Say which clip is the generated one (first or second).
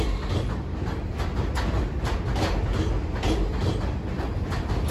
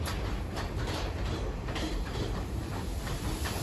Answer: second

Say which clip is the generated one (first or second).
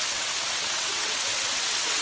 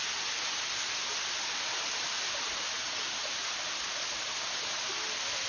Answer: first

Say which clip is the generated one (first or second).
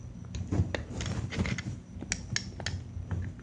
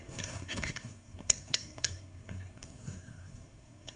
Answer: second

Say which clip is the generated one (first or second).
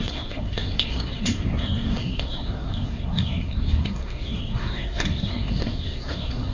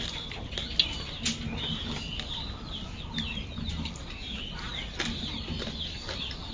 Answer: first